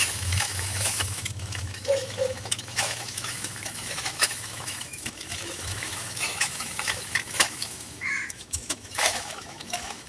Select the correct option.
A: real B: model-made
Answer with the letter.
B